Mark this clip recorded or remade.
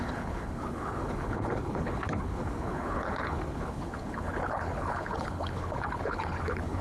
remade